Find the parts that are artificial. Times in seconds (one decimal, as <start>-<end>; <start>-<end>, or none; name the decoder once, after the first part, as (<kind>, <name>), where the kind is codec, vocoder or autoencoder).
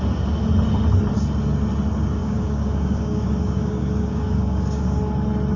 2.2-5.0 (codec, DAC)